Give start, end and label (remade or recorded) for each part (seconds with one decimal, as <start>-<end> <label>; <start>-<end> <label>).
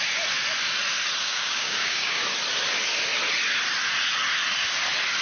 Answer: 0.0-1.2 recorded; 1.2-2.2 remade; 2.2-5.2 recorded